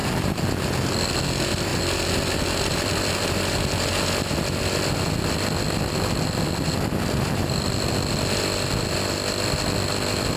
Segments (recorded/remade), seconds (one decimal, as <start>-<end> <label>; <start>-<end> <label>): 0.0-10.4 recorded